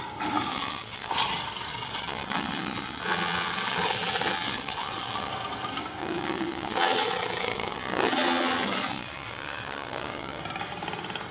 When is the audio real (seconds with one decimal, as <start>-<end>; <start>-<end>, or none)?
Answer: 0.0-0.5; 1.1-1.7; 5.3-6.0; 10.4-11.3